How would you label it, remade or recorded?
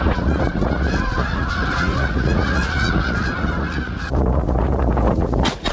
remade